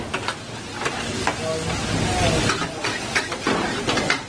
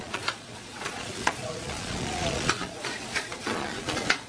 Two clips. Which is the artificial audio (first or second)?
second